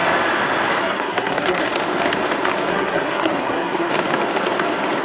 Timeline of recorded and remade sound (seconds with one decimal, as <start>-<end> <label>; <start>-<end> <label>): 0.0-0.8 recorded; 0.8-1.7 remade; 1.7-2.7 recorded; 2.7-3.9 remade; 3.9-5.0 recorded